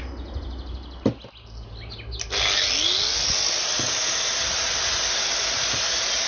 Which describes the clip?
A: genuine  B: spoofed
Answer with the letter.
A